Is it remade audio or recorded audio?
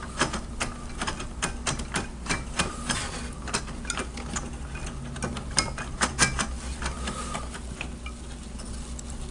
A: recorded